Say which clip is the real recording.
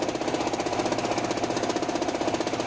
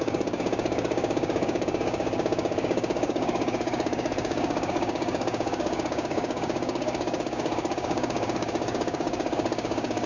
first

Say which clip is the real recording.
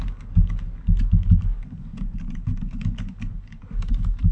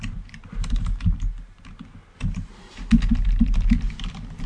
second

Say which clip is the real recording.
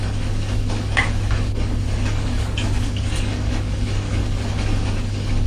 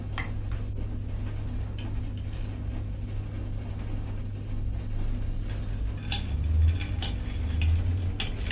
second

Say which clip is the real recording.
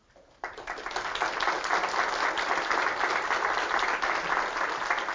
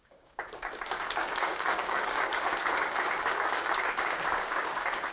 first